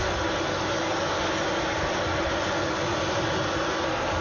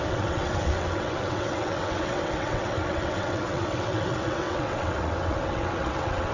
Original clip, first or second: first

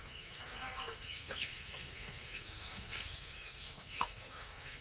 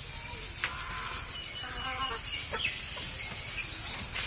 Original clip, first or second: second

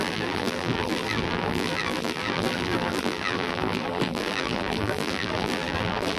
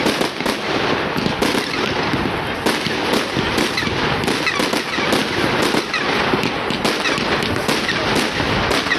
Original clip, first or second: second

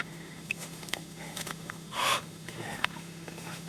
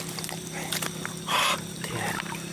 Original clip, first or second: second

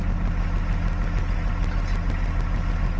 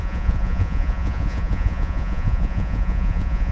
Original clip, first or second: first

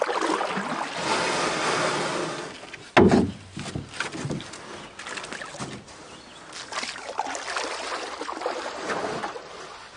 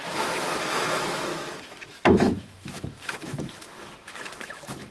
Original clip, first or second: first